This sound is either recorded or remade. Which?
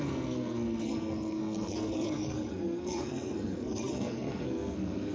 remade